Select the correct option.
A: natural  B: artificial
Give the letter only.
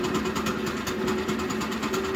A